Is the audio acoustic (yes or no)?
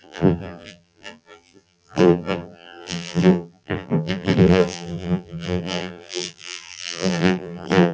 no